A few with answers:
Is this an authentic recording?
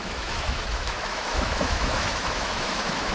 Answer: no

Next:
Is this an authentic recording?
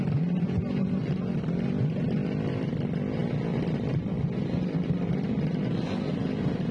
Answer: yes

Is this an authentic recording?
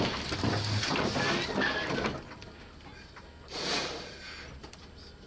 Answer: yes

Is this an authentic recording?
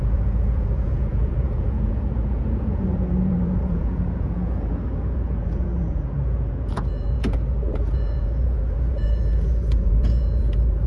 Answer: no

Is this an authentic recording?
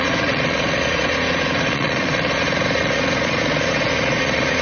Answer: no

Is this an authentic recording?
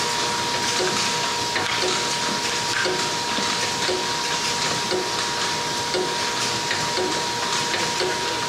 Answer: yes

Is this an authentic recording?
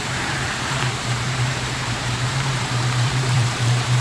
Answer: no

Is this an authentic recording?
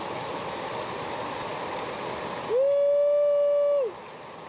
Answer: yes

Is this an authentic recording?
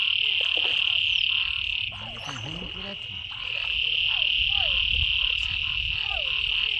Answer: yes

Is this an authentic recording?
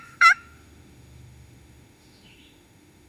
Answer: no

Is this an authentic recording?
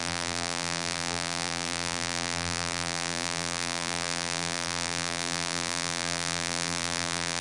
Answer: no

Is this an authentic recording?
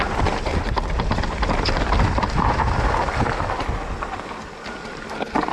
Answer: yes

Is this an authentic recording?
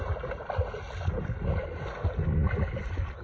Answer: yes